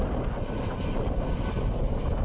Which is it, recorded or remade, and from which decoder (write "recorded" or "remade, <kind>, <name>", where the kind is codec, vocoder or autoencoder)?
recorded